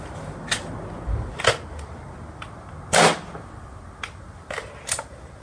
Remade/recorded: recorded